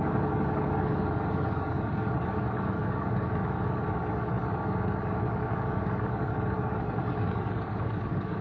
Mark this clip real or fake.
fake